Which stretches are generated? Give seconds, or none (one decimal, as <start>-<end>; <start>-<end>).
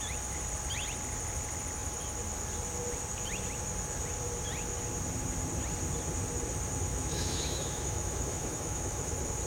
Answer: 6.9-9.1